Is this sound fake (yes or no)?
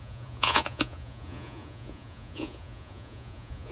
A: yes